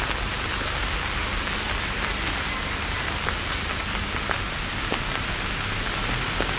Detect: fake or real real